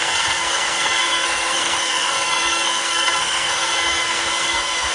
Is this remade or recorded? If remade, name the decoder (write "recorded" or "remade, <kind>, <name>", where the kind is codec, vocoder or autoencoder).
remade, codec, SNAC